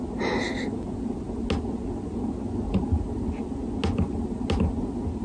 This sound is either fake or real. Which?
real